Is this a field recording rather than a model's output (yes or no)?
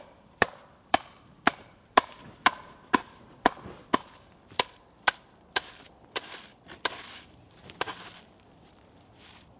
no